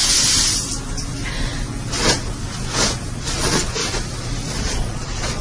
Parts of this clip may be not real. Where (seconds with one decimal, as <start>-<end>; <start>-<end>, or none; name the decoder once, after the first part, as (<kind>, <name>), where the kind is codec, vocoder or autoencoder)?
3.2-3.8 (vocoder, Vocos); 4.6-5.4